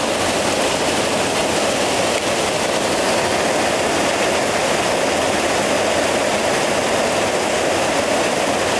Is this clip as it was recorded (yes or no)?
yes